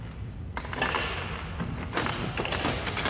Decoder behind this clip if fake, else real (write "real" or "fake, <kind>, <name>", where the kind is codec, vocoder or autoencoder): real